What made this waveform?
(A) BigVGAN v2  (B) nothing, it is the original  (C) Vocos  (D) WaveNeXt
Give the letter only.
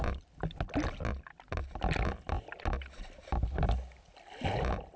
B